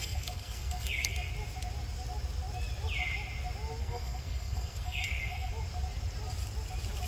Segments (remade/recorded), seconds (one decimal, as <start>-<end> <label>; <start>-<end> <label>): 0.0-1.3 remade; 1.3-3.8 recorded; 3.8-5.5 remade; 5.5-7.1 recorded